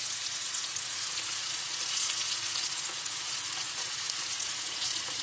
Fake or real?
fake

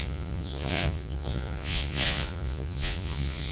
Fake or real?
fake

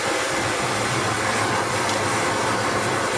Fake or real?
real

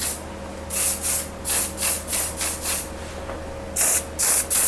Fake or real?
real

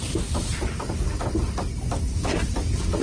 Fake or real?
real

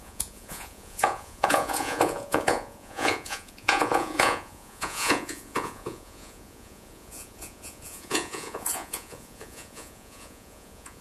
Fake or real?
fake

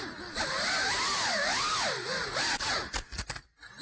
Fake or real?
real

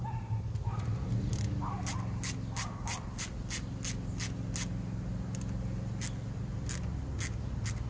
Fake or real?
real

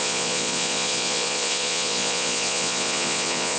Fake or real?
fake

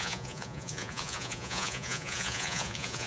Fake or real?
fake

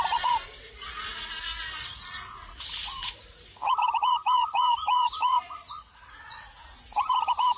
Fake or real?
fake